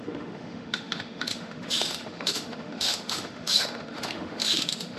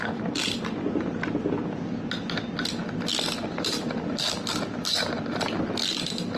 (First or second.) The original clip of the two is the second